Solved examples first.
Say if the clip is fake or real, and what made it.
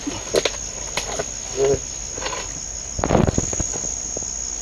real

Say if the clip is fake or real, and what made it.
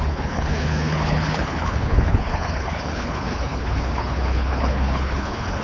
fake, codec, HILCodec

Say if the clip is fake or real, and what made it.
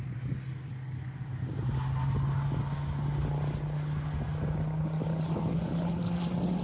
real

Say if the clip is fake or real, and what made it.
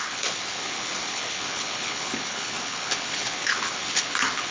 fake, codec, HILCodec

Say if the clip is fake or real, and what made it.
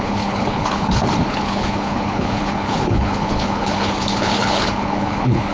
fake, codec, HILCodec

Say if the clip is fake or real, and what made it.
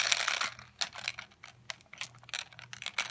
real